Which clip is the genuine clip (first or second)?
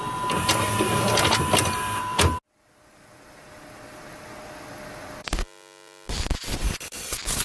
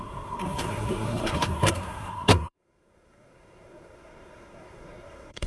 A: first